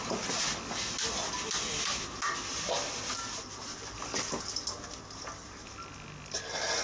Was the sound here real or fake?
real